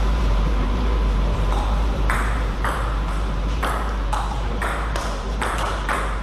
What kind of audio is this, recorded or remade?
remade